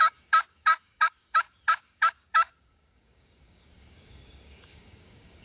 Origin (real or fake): fake